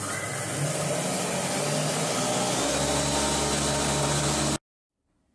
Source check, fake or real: real